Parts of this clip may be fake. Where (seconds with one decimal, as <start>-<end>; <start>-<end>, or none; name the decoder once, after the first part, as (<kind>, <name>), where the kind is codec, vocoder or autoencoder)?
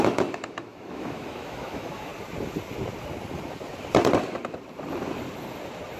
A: 0.0-2.1 (autoencoder, DAC-VAE)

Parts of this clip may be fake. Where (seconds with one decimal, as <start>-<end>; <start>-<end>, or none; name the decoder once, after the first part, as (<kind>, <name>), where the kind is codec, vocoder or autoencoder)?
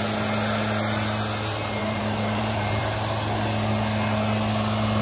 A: 1.8-2.8 (vocoder, BigVGAN v2)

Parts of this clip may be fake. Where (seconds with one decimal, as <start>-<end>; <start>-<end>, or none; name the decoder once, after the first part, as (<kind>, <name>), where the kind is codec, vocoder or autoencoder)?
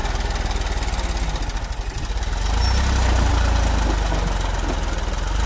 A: none